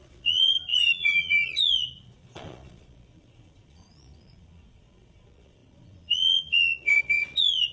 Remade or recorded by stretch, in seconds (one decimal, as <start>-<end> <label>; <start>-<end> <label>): 0.0-7.7 remade